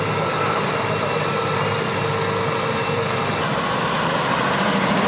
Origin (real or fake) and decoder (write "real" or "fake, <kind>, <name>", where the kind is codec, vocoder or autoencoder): real